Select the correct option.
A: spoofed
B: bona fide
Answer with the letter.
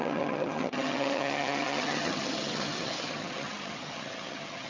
A